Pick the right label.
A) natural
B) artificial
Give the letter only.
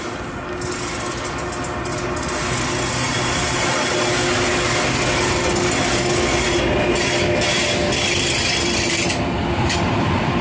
A